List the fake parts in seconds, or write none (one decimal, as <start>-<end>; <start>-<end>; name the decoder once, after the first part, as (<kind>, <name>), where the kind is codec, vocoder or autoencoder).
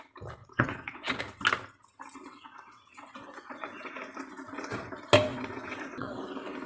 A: 0.4-1.2 (vocoder, WaveNeXt); 2.3-4.0; 5.3-6.2